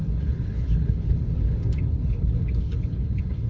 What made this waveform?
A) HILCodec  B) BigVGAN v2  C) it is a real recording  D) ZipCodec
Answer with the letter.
A